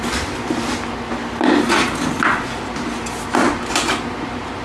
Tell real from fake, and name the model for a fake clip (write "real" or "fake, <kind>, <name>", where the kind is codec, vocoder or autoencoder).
real